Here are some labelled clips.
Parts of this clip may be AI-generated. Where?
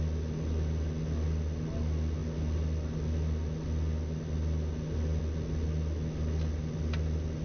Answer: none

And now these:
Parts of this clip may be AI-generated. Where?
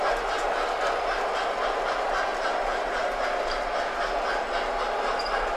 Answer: 2.3-4.1 (vocoder, BigVGAN v2)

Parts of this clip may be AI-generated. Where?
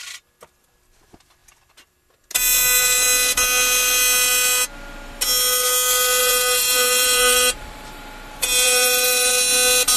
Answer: 6.2-9.3 (vocoder, BigVGAN v2)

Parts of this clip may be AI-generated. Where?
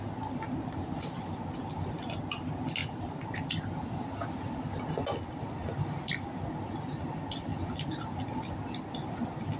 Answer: none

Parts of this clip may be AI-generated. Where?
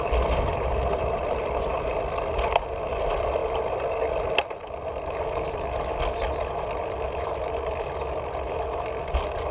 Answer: none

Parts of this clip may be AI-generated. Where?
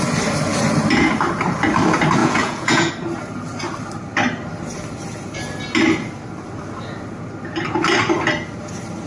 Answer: 2.2-2.9 (vocoder, Vocos)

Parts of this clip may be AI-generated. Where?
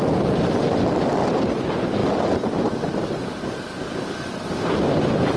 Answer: none